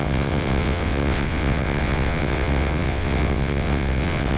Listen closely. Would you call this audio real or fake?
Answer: fake